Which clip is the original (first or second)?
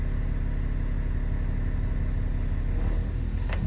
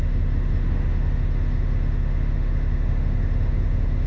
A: first